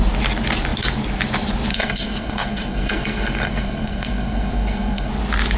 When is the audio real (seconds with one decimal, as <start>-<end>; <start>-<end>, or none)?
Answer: 0.0-1.7; 5.1-5.6